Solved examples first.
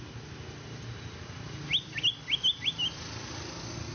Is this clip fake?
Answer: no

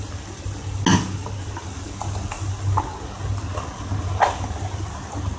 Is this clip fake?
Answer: no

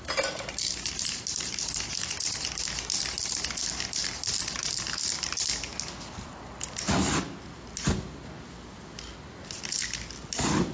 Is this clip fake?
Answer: no